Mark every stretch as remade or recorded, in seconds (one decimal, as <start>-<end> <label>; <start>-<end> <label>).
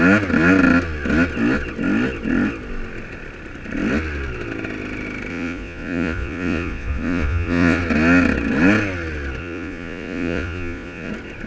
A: 0.0-5.3 recorded; 5.3-7.8 remade; 7.8-9.4 recorded; 9.4-11.1 remade; 11.1-11.5 recorded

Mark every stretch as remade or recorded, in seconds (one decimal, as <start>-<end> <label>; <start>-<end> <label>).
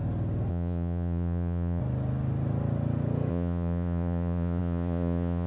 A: 0.0-0.5 recorded; 0.5-1.8 remade; 1.8-3.3 recorded; 3.3-5.5 remade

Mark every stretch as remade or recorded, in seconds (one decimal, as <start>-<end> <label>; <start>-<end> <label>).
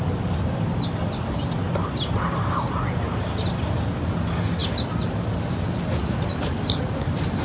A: 0.0-7.4 recorded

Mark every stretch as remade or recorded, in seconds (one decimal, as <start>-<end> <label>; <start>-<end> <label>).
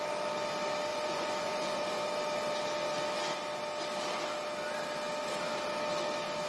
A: 0.0-0.9 recorded; 0.9-2.0 remade; 2.0-6.5 recorded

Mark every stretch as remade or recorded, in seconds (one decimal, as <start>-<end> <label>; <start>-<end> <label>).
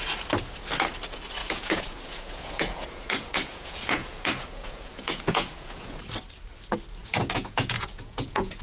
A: 0.0-1.4 recorded; 1.4-6.0 remade; 6.0-7.0 recorded; 7.0-8.6 remade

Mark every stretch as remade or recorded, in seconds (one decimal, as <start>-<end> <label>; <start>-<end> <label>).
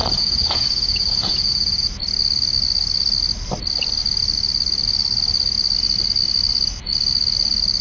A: 0.0-2.0 remade; 2.0-7.8 recorded